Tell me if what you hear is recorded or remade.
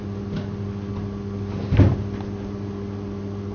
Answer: recorded